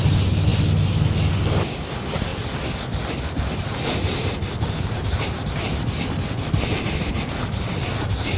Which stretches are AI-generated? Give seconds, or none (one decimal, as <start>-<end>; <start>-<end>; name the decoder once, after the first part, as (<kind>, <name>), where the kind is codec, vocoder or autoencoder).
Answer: none